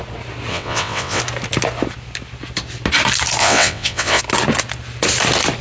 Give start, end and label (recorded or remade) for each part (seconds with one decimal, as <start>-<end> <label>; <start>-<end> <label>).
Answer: 0.0-0.5 recorded; 0.5-1.2 remade; 1.2-3.4 recorded; 3.4-4.2 remade; 4.2-5.6 recorded